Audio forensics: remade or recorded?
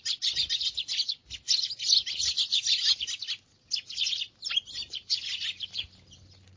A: recorded